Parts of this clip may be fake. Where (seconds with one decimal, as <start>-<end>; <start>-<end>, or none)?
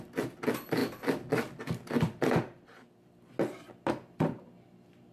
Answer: none